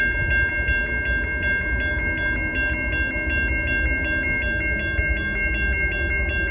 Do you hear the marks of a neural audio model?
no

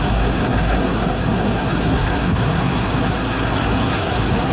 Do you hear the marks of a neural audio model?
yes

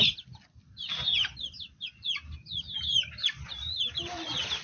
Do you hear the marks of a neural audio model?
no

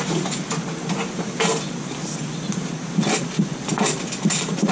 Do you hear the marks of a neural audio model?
no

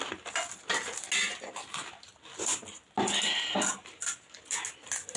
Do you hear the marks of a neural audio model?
no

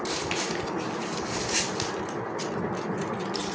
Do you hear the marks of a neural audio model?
no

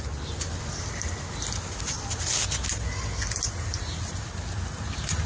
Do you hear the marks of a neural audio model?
no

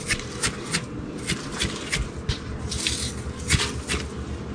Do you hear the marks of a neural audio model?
no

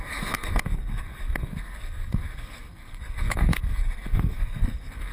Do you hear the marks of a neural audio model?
yes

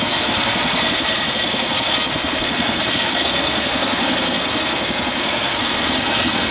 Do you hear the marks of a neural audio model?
yes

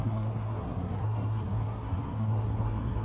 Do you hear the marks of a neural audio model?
yes